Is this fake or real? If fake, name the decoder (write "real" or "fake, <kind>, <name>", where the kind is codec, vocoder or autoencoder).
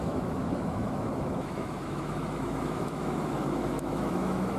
fake, autoencoder, DAC-VAE